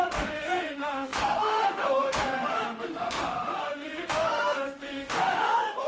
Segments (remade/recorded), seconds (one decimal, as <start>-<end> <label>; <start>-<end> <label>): 0.0-5.9 remade